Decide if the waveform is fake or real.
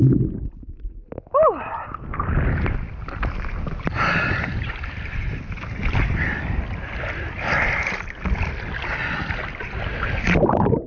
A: real